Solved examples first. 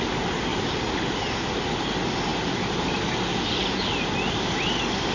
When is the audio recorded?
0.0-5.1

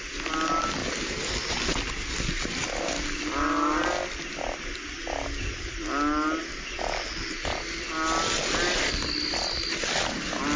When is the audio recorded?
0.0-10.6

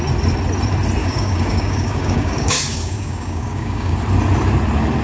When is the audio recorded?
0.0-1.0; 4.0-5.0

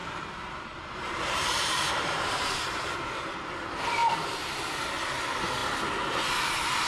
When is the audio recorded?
2.6-4.0; 4.9-6.9

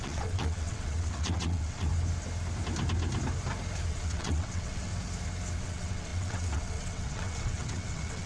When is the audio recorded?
1.9-3.9; 4.9-5.6

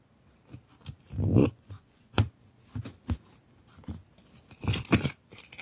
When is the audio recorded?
0.0-1.4; 2.3-5.6

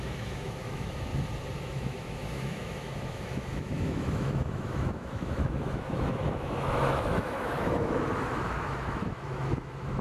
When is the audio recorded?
1.1-1.6